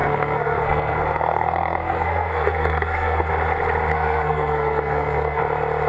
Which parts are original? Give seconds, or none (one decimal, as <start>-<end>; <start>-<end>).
3.3-3.9; 5.4-5.9